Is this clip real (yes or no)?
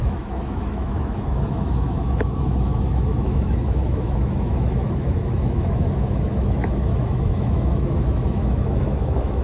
no